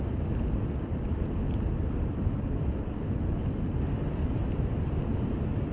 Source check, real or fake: real